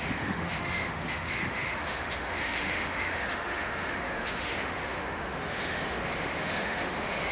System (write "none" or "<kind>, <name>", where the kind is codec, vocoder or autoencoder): autoencoder, DAC-VAE